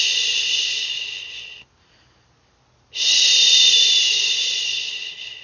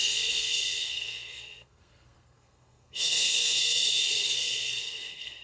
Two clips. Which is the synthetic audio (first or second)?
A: second